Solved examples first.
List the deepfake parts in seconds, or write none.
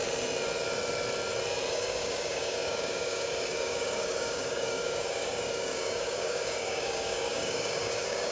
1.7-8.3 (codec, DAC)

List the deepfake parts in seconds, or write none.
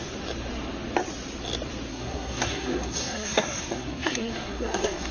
1.9-5.1 (codec, SNAC)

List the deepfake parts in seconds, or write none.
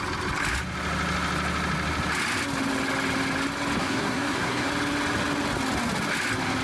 3.8-4.7 (codec, SNAC)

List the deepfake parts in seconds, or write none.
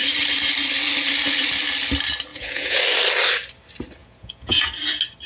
2.3-2.8 (vocoder, Vocos); 4.0-4.7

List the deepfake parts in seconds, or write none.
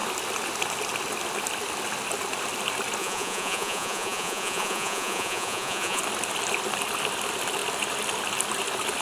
3.0-6.0 (vocoder, Vocos)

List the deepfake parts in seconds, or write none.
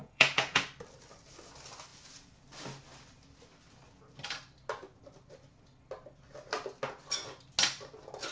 0.0-0.6 (vocoder, Vocos)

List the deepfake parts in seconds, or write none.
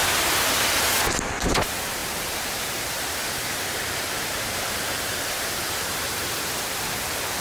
2.0-6.4 (vocoder, BigVGAN v2)